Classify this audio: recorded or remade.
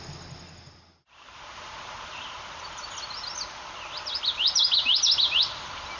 recorded